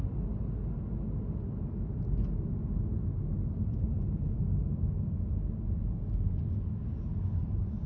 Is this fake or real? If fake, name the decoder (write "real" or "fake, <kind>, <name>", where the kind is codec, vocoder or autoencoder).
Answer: real